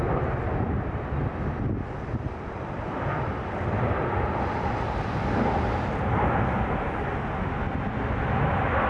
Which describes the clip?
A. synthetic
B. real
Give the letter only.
B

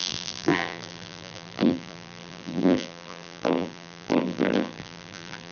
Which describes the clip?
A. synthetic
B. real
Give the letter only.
A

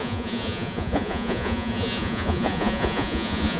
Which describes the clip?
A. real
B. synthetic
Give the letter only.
B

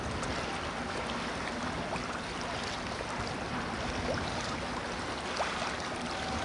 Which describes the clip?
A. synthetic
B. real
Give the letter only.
B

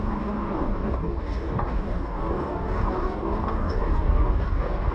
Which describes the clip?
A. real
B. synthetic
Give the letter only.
B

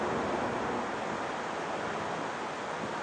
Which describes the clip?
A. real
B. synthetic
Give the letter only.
A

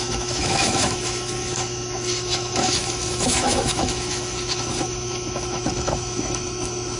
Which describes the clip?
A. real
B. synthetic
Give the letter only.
B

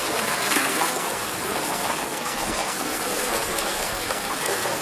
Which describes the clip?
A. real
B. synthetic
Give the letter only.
B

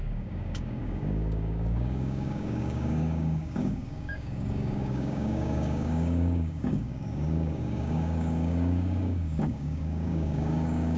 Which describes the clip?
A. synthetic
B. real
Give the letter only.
A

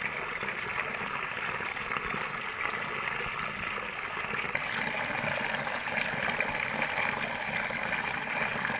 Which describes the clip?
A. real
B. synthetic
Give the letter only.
A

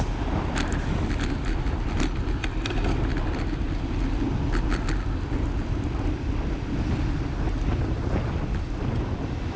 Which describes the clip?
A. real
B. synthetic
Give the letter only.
A